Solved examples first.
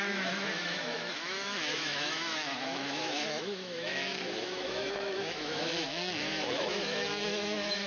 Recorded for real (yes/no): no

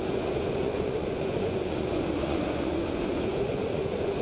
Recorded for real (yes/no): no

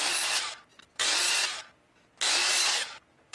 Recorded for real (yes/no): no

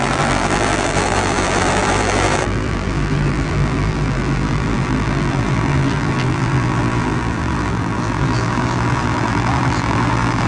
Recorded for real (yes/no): no